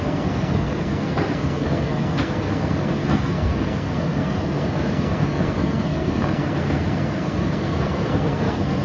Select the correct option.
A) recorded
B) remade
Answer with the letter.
B